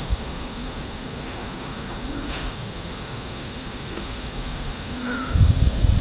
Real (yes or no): no